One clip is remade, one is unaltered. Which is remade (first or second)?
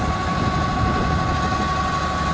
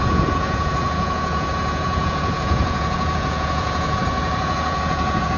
second